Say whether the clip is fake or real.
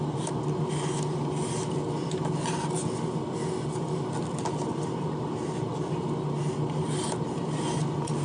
real